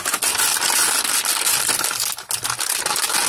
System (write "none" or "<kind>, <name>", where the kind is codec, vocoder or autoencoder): none